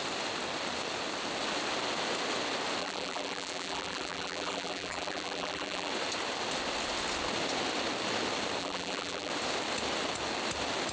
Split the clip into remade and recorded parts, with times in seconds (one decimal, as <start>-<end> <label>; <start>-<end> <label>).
0.0-2.8 recorded; 2.8-5.9 remade; 5.9-8.6 recorded; 8.6-9.3 remade; 9.3-10.9 recorded